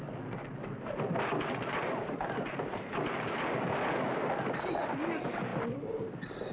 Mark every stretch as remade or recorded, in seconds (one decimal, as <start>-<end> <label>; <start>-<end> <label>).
0.0-1.8 recorded; 1.8-3.7 remade; 3.7-6.5 recorded